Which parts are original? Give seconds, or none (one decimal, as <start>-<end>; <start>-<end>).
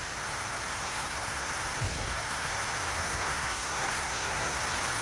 0.0-0.7; 1.5-1.9; 2.6-3.0; 4.6-5.0